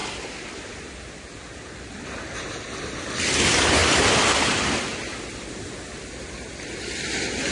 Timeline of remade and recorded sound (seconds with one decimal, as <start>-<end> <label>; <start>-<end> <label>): 0.0-2.0 remade; 2.0-3.8 recorded; 3.8-4.4 remade; 4.4-7.5 recorded